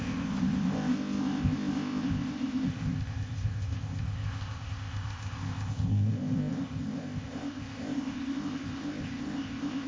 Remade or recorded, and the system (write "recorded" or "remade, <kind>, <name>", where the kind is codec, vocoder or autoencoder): remade, codec, ZipCodec